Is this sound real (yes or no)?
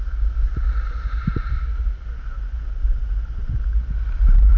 yes